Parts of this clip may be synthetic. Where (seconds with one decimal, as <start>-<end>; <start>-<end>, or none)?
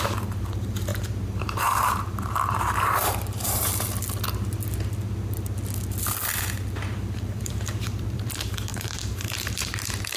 0.0-3.7; 6.4-10.2